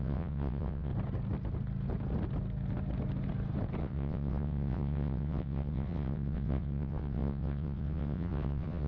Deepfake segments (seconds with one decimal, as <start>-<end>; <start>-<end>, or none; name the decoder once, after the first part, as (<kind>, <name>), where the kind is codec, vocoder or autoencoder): 0.0-0.9 (vocoder, WaveNeXt); 3.8-8.9